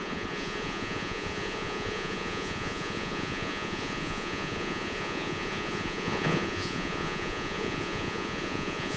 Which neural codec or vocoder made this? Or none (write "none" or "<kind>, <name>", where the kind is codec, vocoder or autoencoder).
vocoder, Vocos